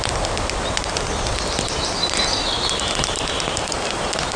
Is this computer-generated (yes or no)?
no